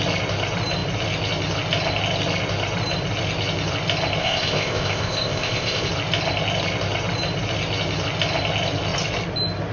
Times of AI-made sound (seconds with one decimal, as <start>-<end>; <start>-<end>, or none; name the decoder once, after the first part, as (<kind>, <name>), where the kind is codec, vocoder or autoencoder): 4.2-5.9 (codec, ZipCodec)